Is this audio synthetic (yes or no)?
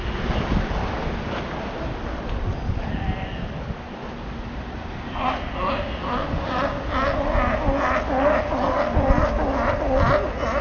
no